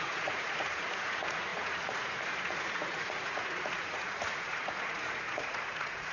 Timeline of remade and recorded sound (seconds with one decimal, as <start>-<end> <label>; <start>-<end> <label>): 0.0-6.1 remade